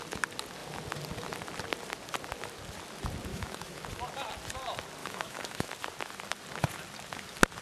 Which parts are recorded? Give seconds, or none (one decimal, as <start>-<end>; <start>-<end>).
0.0-3.3; 3.8-5.0; 5.7-7.6